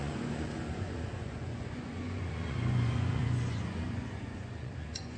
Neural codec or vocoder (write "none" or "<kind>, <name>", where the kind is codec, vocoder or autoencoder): vocoder, Vocos